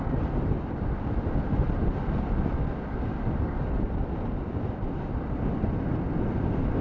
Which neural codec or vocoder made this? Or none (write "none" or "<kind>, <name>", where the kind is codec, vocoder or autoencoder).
none